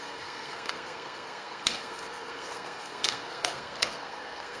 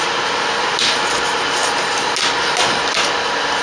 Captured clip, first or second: second